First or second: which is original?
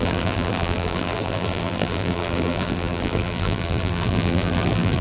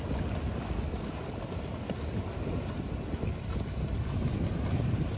second